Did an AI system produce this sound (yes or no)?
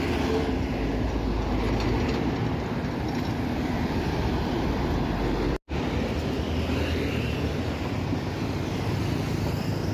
no